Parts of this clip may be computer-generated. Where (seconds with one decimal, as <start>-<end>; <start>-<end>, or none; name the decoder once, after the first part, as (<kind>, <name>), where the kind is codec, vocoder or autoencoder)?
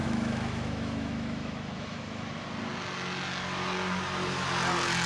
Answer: 0.0-2.3 (autoencoder, DAC-VAE)